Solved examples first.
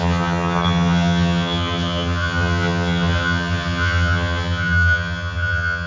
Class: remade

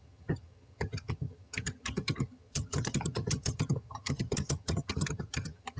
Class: remade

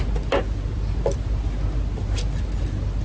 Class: recorded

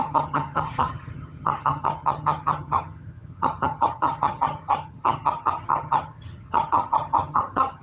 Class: remade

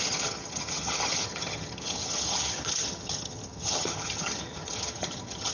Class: remade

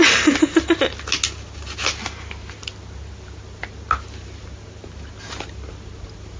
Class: recorded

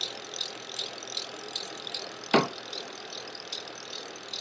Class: recorded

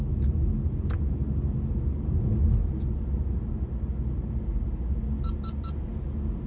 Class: recorded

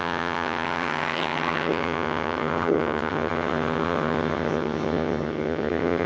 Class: remade